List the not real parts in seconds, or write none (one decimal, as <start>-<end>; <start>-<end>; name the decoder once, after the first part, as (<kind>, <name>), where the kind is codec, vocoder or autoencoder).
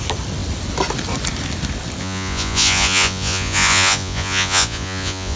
2.0-5.4 (vocoder, Vocos)